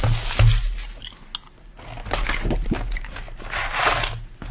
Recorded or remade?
recorded